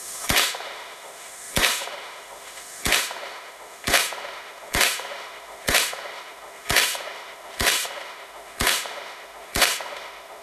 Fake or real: fake